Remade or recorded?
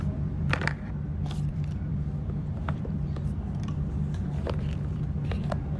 remade